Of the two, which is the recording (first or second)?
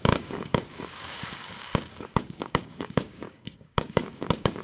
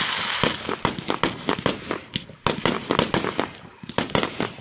second